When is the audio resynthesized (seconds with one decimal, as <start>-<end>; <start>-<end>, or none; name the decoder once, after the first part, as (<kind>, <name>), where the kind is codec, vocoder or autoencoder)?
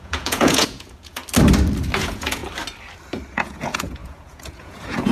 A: 0.0-1.2 (vocoder, Vocos); 2.0-2.4; 3.3-5.1